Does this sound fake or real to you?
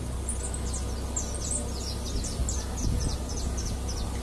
real